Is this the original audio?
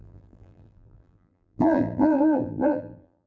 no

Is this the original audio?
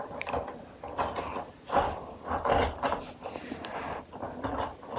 yes